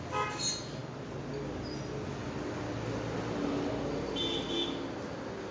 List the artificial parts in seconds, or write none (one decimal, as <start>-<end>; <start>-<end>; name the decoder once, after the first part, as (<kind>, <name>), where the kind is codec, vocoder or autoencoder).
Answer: none